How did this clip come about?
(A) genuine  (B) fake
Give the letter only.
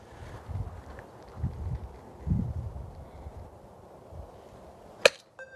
A